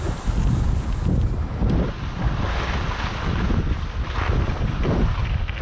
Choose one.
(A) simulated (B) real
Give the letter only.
B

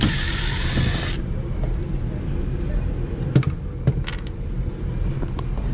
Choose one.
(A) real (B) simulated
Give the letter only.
A